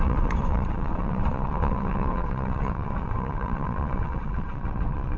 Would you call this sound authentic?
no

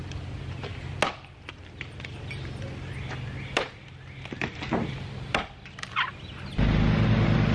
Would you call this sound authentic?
yes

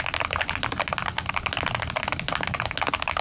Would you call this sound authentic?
yes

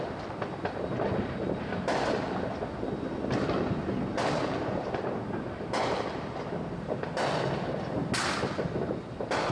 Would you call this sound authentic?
yes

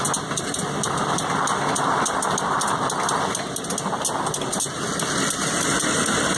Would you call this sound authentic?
yes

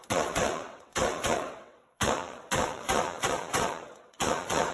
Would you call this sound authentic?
no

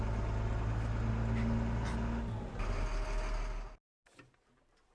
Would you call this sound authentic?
yes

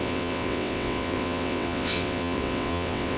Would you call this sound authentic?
no